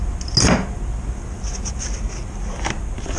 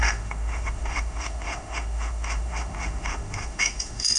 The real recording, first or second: first